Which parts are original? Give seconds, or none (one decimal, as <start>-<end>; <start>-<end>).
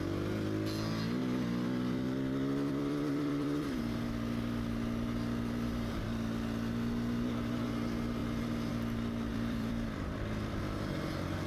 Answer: 0.0-1.2; 3.8-9.3; 10.6-11.5